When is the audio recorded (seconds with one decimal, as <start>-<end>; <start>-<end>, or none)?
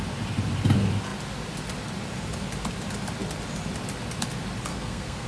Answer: 0.0-4.7